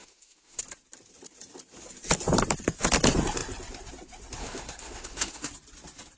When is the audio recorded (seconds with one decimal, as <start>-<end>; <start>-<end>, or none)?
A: 0.6-4.4; 5.5-6.2